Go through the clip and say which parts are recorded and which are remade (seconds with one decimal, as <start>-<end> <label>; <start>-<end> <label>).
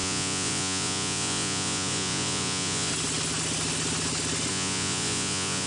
0.0-2.9 remade; 2.9-4.5 recorded; 4.5-5.7 remade